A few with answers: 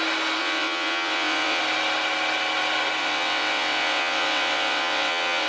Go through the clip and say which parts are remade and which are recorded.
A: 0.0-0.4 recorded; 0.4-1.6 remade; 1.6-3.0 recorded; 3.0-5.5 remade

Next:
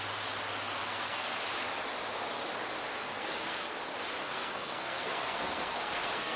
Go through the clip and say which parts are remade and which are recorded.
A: 0.0-0.8 recorded; 0.8-1.3 remade; 1.3-3.0 recorded; 3.0-3.8 remade; 3.8-4.2 recorded; 4.2-6.4 remade

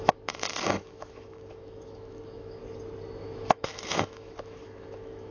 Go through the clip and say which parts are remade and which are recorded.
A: 0.0-2.6 remade; 2.6-3.2 recorded; 3.2-5.3 remade

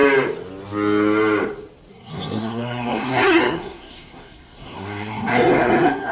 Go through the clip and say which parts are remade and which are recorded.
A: 0.0-1.9 recorded; 1.9-6.1 remade

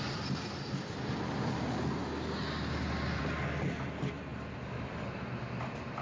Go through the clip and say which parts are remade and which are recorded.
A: 0.0-6.0 recorded